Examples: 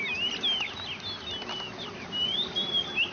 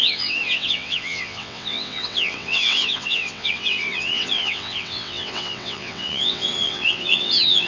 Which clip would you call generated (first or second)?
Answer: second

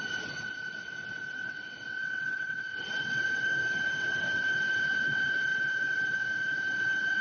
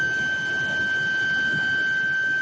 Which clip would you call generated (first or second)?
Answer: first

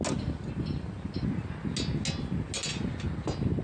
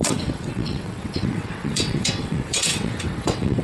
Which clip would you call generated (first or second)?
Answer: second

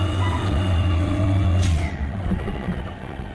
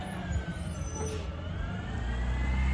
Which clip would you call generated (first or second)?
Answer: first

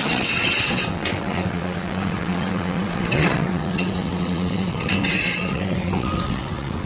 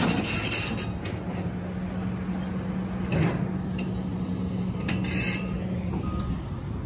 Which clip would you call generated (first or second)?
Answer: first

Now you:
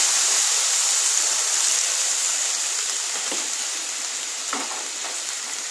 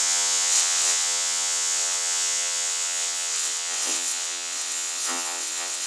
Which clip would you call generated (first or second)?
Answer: second